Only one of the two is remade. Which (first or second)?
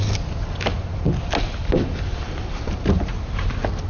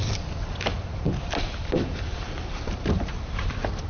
second